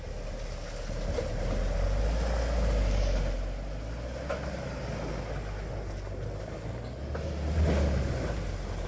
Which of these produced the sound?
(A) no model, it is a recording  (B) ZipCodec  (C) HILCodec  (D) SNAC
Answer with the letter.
A